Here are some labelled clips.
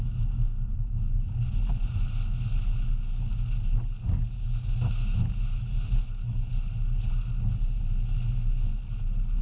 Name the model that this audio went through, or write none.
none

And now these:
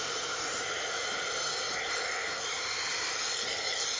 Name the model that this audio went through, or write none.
none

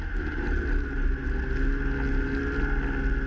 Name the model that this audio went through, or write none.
none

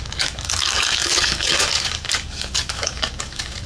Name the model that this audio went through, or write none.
codec, DAC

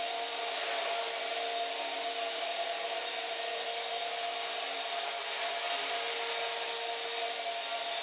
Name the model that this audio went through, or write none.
none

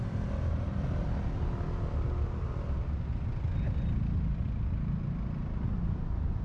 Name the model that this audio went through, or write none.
none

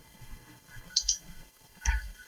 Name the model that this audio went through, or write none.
codec, SNAC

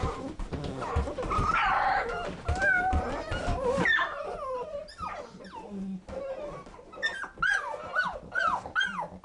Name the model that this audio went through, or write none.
none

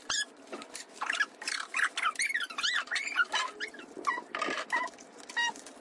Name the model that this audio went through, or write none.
none